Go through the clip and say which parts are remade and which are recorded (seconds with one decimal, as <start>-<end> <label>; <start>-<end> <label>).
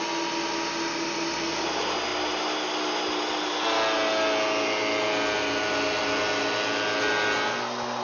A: 0.0-8.0 recorded